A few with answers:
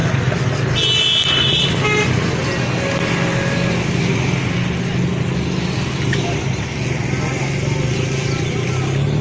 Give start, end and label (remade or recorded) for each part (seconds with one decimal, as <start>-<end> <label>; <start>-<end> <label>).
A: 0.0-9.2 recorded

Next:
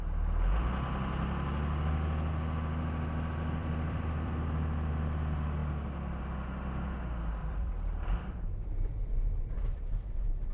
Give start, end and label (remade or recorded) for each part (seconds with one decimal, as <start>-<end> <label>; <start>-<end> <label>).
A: 0.0-3.6 recorded; 3.6-4.4 remade; 4.4-7.4 recorded; 7.4-9.2 remade; 9.2-10.5 recorded

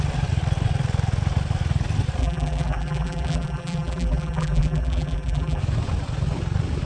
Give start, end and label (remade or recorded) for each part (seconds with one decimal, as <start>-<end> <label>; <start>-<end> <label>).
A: 0.0-2.2 recorded; 2.2-5.6 remade; 5.6-6.9 recorded

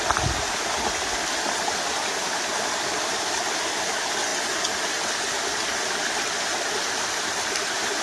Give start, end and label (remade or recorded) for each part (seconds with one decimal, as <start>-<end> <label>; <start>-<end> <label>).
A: 0.0-8.0 recorded

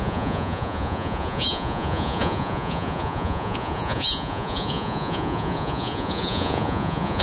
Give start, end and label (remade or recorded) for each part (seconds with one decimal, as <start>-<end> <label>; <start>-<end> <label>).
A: 0.0-7.2 remade